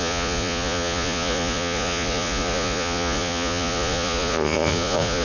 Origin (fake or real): fake